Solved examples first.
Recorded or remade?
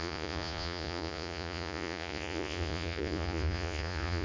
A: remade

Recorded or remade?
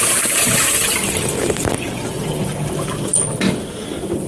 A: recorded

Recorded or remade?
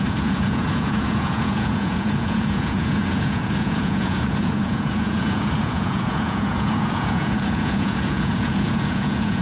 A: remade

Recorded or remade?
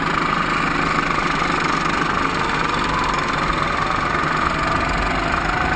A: recorded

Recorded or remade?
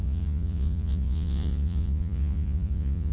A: remade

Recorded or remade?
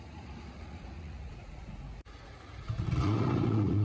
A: remade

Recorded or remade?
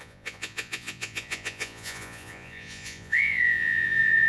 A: remade